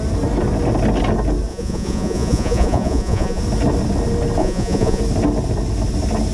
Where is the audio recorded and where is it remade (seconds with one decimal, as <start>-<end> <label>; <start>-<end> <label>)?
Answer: 0.0-1.5 recorded; 1.5-3.4 remade; 3.4-4.4 recorded; 4.4-5.0 remade; 5.0-6.3 recorded